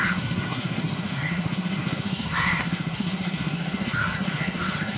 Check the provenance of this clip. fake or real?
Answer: fake